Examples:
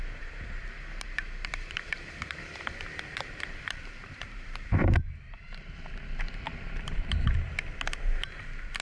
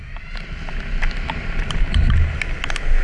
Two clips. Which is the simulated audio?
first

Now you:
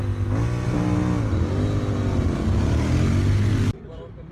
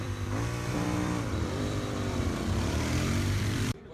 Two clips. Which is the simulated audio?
second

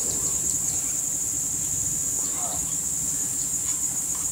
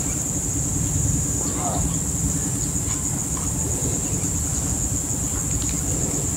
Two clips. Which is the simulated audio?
first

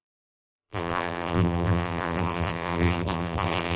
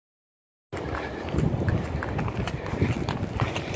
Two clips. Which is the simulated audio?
first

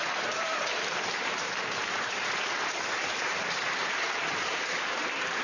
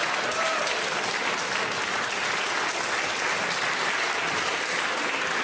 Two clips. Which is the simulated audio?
first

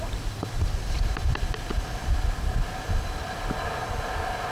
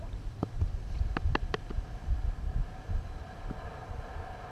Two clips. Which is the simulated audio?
second